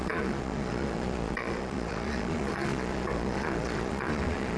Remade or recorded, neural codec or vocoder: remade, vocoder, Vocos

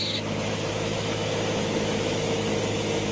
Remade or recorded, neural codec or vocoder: remade, autoencoder, DAC-VAE